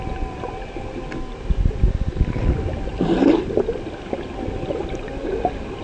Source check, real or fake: real